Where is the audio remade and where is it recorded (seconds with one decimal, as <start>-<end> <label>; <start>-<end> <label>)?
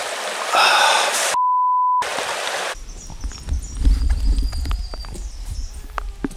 0.0-6.4 remade